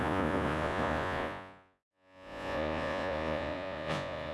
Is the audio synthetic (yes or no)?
yes